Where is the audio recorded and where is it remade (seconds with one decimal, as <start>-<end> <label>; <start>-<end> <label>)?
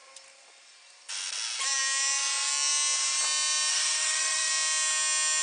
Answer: 0.0-3.7 recorded; 3.7-4.5 remade; 4.5-5.4 recorded